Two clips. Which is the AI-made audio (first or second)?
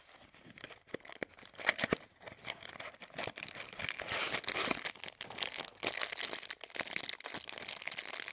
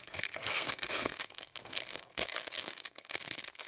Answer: second